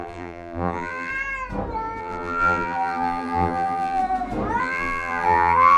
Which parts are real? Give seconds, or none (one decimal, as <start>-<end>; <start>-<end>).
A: 1.1-2.0; 4.0-4.6